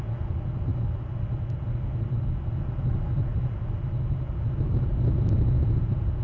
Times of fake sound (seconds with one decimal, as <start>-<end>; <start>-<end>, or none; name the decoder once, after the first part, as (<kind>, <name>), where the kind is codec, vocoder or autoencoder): none